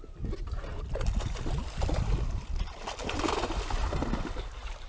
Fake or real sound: real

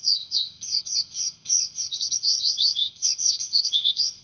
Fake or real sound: fake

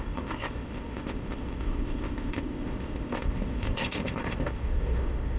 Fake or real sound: fake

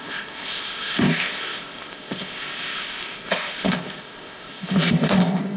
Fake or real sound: fake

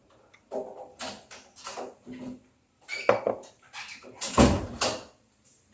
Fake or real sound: real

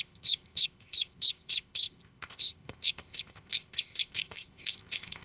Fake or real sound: fake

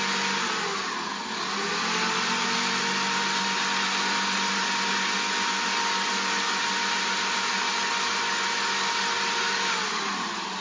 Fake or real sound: real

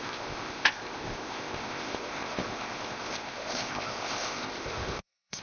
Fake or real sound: fake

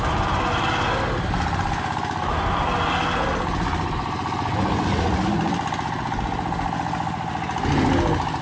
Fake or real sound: real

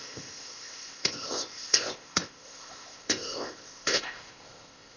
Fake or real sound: fake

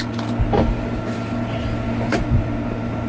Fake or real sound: real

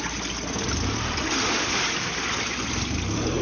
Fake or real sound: real